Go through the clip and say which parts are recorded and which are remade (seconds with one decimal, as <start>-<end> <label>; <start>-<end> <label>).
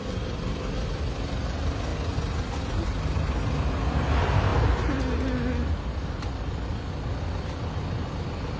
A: 0.0-8.6 recorded